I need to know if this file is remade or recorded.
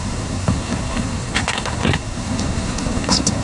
remade